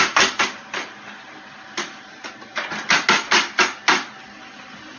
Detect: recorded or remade recorded